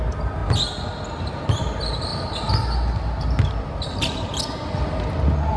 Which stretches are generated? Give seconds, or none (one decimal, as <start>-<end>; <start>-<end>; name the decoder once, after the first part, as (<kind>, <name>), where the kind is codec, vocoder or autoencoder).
none